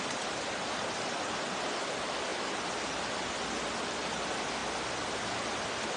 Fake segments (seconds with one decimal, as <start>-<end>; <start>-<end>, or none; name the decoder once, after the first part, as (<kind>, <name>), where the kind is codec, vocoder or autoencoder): none

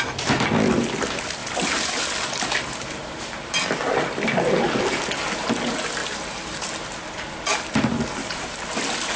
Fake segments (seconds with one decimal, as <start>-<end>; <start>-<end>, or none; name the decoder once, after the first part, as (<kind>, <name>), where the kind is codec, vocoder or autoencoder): 1.4-2.0 (vocoder, BigVGAN v2)

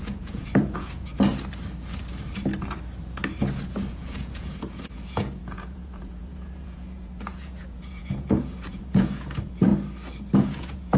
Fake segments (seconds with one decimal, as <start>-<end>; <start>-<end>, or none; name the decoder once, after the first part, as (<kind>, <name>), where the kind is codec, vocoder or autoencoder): 0.0-1.1 (vocoder, Vocos); 3.9-9.7; 10.4-11.0

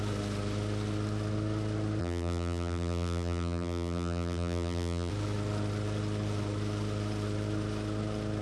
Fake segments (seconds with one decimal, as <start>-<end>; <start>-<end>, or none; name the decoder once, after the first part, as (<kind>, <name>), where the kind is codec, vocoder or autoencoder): 2.0-5.1 (vocoder, BigVGAN v2)